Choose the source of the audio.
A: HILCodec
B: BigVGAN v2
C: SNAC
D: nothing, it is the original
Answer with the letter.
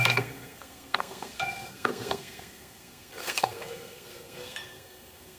C